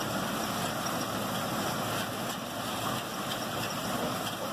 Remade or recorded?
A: recorded